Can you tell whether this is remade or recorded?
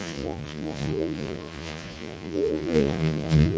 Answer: remade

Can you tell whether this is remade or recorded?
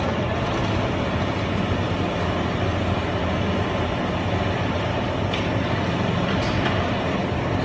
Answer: recorded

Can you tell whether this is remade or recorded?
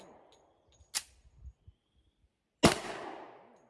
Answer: recorded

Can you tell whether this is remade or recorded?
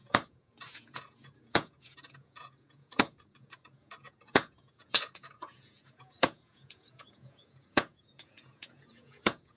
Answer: remade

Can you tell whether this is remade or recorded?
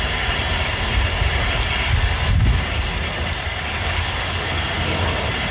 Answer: recorded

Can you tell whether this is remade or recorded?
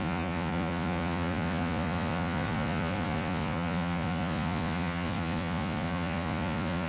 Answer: remade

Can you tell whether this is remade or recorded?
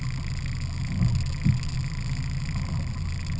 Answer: recorded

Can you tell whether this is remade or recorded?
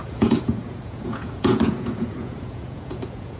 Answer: remade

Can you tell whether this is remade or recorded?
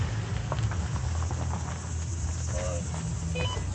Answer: recorded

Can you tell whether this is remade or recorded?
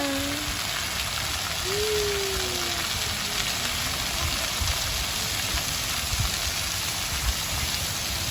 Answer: recorded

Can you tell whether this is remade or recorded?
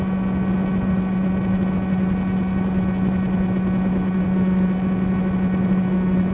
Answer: recorded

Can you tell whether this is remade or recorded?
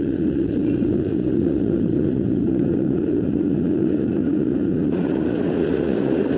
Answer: remade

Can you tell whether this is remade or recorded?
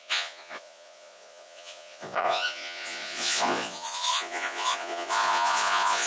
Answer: remade